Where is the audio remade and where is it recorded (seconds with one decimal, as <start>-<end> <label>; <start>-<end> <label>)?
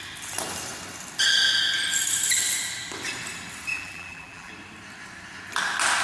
0.0-3.7 recorded; 3.7-4.5 remade; 4.5-6.0 recorded